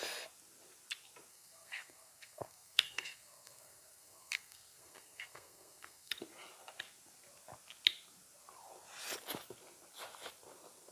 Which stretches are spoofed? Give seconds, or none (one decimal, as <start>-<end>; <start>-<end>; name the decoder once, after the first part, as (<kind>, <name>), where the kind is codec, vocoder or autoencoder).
1.3-6.1 (codec, SNAC)